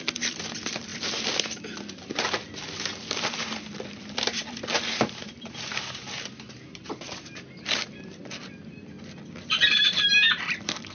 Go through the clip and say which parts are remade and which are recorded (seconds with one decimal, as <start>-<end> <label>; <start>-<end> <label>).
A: 0.0-8.2 remade; 8.2-9.4 recorded; 9.4-10.9 remade